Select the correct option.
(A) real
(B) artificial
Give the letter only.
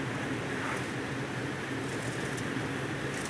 A